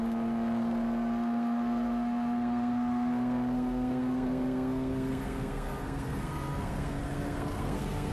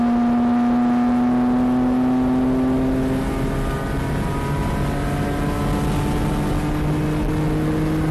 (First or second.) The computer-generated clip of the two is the first